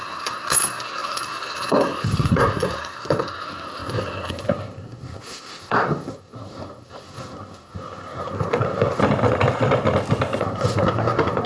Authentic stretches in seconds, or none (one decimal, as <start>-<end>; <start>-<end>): 9.0-10.4